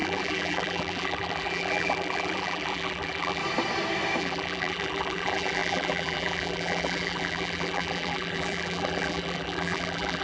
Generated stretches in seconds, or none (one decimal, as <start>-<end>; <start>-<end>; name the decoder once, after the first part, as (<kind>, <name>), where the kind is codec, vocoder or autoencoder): 0.0-3.4 (vocoder, BigVGAN v2); 4.2-10.2

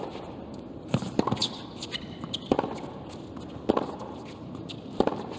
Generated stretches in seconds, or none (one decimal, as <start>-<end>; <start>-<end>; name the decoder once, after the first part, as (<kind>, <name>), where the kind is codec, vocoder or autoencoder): none

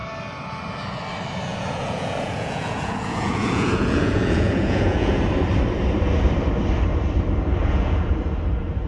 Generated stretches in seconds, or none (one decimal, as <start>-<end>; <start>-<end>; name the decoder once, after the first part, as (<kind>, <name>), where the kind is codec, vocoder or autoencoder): 1.5-5.2 (vocoder, Vocos); 7.6-8.1

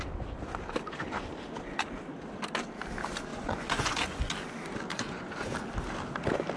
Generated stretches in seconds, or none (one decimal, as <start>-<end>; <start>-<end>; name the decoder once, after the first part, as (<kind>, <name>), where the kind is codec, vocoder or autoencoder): 3.3-4.3 (vocoder, Vocos); 4.9-5.5